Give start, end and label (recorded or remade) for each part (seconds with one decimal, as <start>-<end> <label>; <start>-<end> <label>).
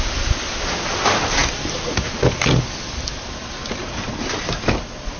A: 0.0-5.2 recorded